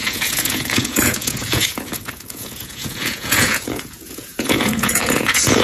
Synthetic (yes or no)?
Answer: yes